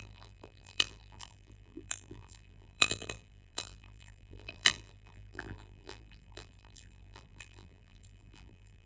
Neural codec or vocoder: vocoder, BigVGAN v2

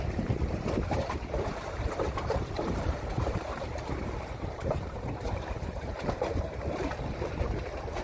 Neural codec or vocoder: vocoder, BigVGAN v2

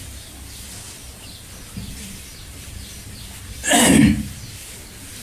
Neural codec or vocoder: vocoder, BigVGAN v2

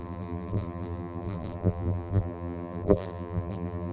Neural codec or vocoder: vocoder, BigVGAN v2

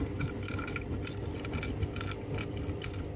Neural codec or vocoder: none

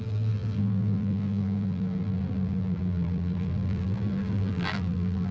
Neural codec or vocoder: vocoder, BigVGAN v2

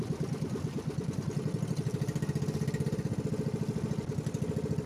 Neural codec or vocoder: none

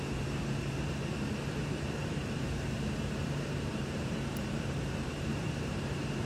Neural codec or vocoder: vocoder, BigVGAN v2